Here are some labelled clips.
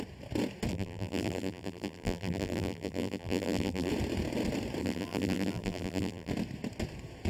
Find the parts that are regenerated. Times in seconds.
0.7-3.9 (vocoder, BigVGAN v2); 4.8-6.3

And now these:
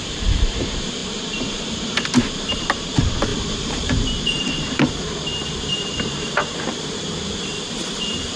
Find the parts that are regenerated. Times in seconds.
0.0-8.4 (vocoder, BigVGAN v2)

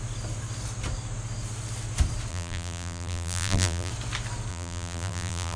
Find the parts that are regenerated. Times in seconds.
2.3-3.9 (vocoder, BigVGAN v2); 4.5-5.6

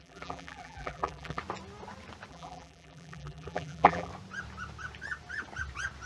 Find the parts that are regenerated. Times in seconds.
0.0-1.4 (vocoder, BigVGAN v2); 2.3-4.1

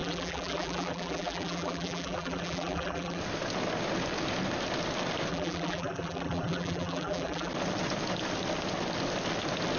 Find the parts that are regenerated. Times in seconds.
0.0-3.2 (vocoder, BigVGAN v2); 5.3-7.5

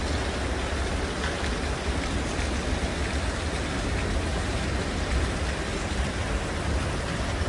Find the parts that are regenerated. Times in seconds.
4.3-5.4 (vocoder, BigVGAN v2)

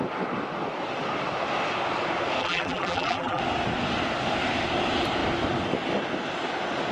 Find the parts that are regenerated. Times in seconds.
2.4-3.4 (vocoder, BigVGAN v2)

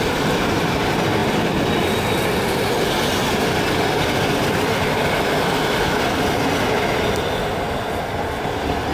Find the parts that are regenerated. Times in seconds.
none